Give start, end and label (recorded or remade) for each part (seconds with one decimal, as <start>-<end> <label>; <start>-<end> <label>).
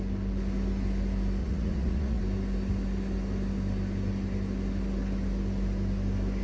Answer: 0.0-1.4 recorded; 1.4-2.2 remade; 2.2-6.4 recorded